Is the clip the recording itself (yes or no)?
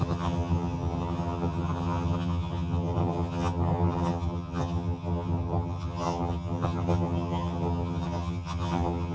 no